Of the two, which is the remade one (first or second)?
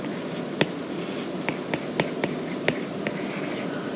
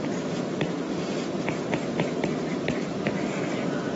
second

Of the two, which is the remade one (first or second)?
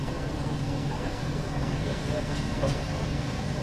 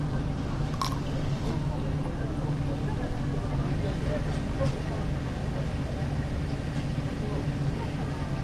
first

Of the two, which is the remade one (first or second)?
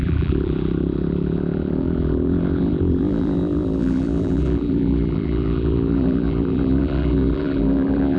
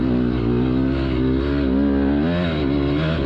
first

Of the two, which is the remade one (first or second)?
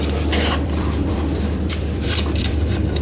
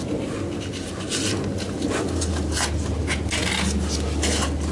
first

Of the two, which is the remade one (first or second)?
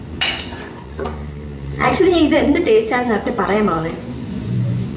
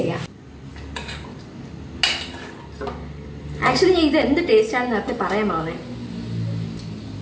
first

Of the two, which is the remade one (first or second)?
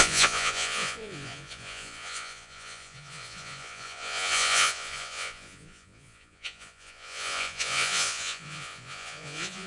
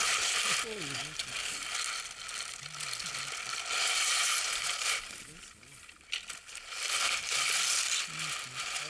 first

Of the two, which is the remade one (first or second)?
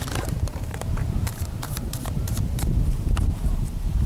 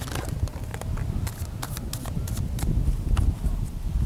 first